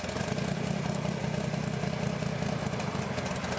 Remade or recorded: recorded